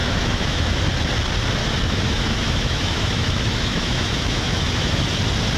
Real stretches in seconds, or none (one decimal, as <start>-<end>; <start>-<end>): 0.8-1.6; 5.0-5.6